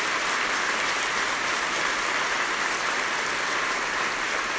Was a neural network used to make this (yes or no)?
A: no